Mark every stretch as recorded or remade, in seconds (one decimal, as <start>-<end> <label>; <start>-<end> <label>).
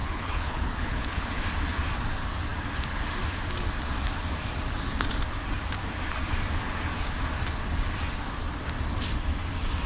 0.0-1.3 remade; 1.3-9.9 recorded